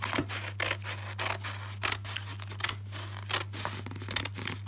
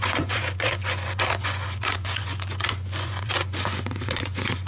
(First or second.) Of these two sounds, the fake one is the second